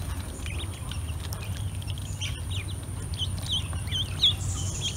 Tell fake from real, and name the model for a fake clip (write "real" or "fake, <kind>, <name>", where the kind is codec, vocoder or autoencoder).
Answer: real